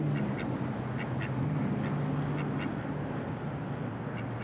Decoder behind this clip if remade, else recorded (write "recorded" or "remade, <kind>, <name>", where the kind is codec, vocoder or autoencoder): recorded